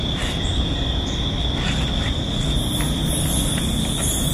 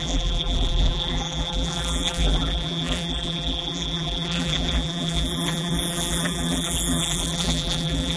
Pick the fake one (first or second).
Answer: second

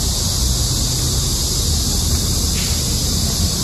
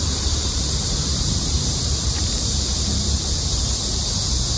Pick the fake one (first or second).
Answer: second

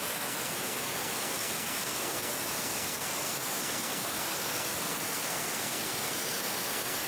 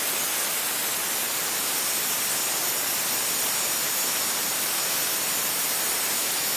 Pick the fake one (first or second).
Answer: first